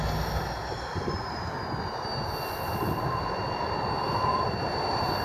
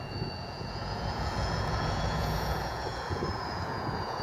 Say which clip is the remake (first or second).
second